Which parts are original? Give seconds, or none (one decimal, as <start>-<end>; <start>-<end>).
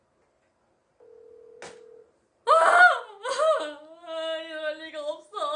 0.0-5.6